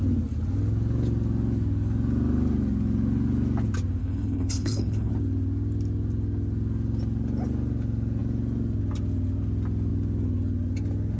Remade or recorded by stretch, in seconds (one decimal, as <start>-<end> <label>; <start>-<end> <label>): 0.0-4.0 recorded; 4.0-5.1 remade; 5.1-11.2 recorded